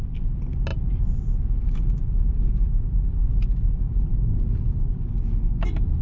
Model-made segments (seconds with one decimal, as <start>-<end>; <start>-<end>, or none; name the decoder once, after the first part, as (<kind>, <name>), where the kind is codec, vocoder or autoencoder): none